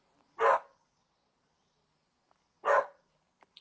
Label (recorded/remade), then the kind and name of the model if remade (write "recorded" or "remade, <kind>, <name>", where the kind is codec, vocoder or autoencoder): recorded